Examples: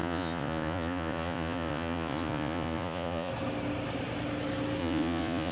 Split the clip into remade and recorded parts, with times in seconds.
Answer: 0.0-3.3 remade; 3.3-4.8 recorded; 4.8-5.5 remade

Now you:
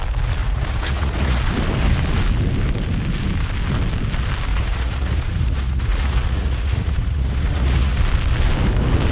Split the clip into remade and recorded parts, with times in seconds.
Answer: 0.0-0.4 recorded; 0.4-1.4 remade; 1.4-4.5 recorded; 4.5-8.0 remade; 8.0-9.1 recorded

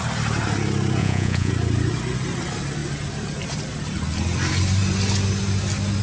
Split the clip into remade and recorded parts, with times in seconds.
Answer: 0.0-1.0 recorded; 1.0-1.5 remade; 1.5-6.0 recorded

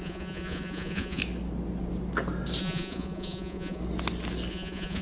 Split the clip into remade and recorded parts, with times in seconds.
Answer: 0.0-1.2 remade; 1.2-2.6 recorded; 2.6-3.8 remade; 3.8-4.5 recorded; 4.5-5.0 remade

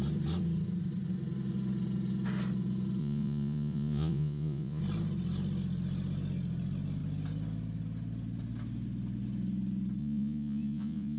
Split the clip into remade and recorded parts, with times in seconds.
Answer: 0.0-3.0 recorded; 3.0-4.8 remade; 4.8-10.0 recorded; 10.0-11.2 remade

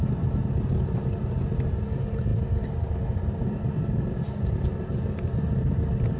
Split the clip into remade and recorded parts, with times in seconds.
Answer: 0.0-6.2 recorded

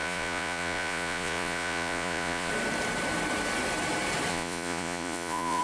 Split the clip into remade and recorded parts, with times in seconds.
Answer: 0.0-2.5 remade; 2.5-4.3 recorded; 4.3-5.6 remade

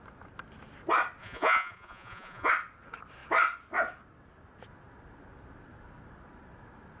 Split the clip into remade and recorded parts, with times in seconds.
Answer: 0.0-1.2 recorded; 1.2-2.5 remade; 2.5-7.0 recorded